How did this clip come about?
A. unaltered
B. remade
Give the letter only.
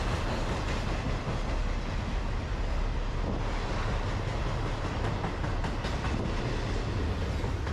A